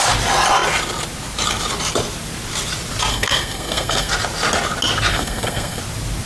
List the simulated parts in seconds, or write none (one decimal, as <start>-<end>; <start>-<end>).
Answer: 3.1-4.1; 5.1-5.8